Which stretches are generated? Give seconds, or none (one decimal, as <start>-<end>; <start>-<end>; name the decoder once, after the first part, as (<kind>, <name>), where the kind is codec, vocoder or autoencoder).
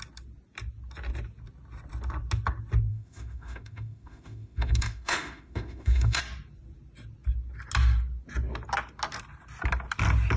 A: 2.9-6.2 (autoencoder, DAC-VAE)